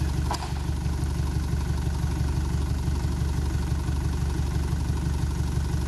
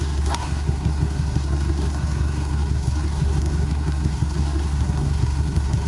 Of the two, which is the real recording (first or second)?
first